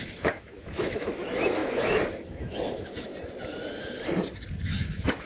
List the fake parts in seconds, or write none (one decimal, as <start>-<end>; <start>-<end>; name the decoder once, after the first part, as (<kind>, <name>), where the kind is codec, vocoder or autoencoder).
0.0-3.1 (autoencoder, DAC-VAE); 4.5-5.3